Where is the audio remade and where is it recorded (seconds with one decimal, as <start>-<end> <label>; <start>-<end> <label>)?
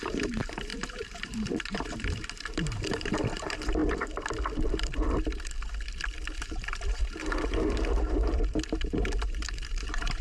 0.0-3.8 remade; 3.8-6.4 recorded; 6.4-10.2 remade